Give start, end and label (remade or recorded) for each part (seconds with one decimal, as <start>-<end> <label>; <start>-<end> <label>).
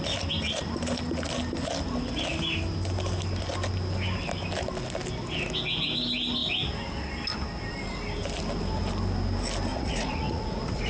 0.0-9.7 recorded; 9.7-10.9 remade